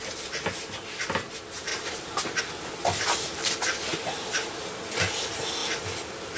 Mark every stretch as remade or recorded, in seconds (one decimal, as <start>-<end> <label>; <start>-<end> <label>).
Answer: 0.0-1.7 recorded; 1.7-2.4 remade; 2.4-3.9 recorded; 3.9-4.8 remade; 4.8-6.4 recorded

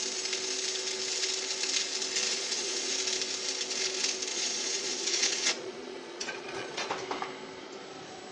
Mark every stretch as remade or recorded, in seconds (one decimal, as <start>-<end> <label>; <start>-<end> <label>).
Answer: 0.0-2.3 recorded; 2.3-2.9 remade; 2.9-4.3 recorded; 4.3-6.9 remade; 6.9-8.3 recorded

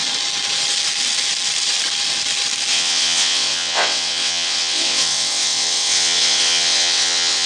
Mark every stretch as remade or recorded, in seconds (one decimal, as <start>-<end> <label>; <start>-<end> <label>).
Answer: 0.0-2.7 recorded; 2.7-7.5 remade